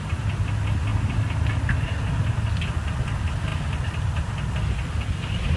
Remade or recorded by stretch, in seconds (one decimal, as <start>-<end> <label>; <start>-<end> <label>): 0.0-5.6 recorded